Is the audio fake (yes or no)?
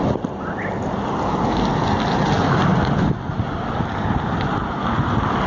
no